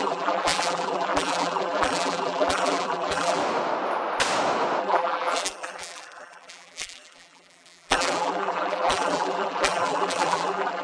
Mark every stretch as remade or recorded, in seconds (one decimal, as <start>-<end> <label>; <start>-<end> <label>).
0.0-3.4 remade; 3.4-4.8 recorded; 4.8-10.8 remade